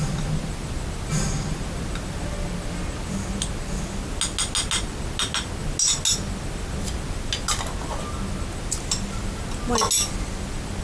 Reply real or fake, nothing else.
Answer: real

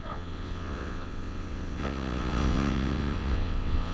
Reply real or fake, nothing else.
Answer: fake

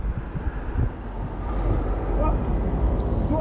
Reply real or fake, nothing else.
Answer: real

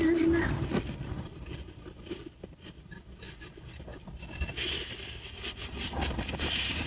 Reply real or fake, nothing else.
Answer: real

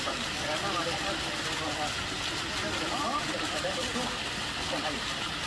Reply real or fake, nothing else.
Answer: real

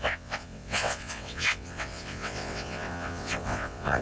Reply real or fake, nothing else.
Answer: fake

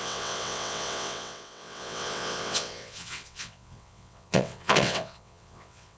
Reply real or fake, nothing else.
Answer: fake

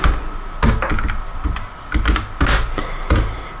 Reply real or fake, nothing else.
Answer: real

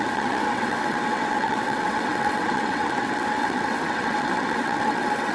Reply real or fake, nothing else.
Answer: fake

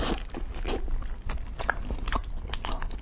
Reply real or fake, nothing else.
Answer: real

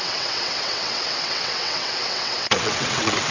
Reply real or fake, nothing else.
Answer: fake